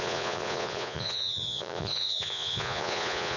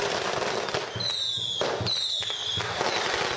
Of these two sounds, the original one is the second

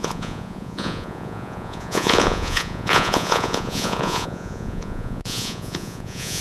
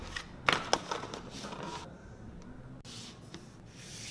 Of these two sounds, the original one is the second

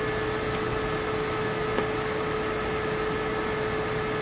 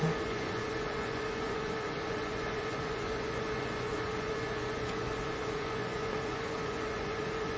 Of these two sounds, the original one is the first